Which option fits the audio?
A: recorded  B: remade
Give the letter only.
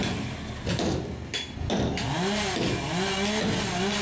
A